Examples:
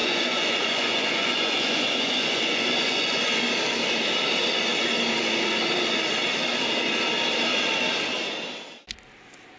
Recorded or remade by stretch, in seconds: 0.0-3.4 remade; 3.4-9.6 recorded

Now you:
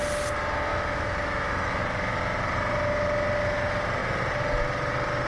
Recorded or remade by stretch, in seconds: 0.0-0.7 recorded; 0.7-1.8 remade; 1.8-5.3 recorded